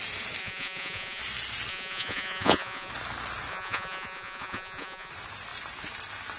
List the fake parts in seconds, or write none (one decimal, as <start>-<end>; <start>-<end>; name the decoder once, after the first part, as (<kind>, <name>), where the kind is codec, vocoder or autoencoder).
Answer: 0.4-1.2 (vocoder, Vocos); 1.7-2.9; 3.5-5.1